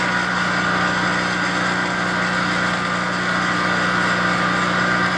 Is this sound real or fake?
real